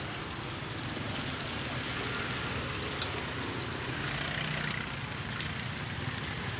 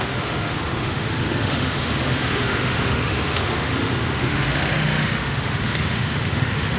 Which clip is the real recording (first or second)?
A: first